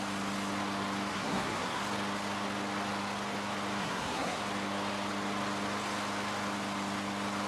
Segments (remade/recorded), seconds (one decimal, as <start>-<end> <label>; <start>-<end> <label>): 0.0-1.1 recorded; 1.1-1.8 remade; 1.8-3.8 recorded; 3.8-4.4 remade; 4.4-7.5 recorded